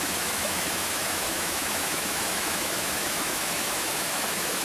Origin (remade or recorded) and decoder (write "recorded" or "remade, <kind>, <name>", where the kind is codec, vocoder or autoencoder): remade, autoencoder, DAC-VAE